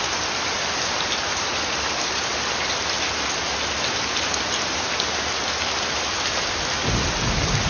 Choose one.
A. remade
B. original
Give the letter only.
B